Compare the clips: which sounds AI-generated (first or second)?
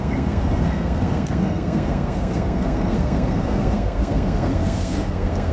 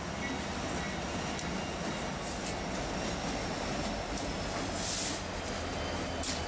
first